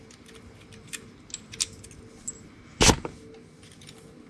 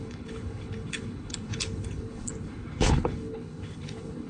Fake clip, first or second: second